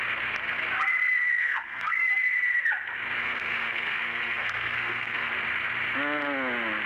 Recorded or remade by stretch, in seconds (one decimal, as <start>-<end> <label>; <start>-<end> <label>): 0.0-1.4 recorded; 1.4-2.1 remade; 2.1-3.2 recorded; 3.2-5.3 remade; 5.3-6.9 recorded